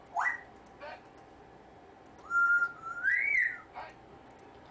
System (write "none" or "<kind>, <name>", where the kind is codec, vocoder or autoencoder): none